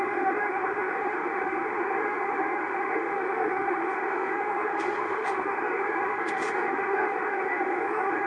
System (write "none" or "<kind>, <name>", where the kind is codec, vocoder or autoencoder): autoencoder, DAC-VAE